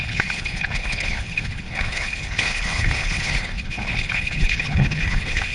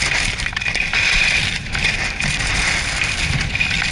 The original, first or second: second